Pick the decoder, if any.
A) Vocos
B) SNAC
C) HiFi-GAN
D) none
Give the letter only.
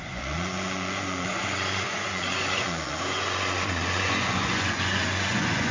A